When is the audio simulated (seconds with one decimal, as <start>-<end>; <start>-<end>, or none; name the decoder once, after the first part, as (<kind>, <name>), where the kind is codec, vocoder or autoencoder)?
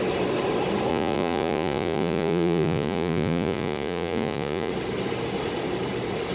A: 0.9-4.7 (vocoder, Vocos)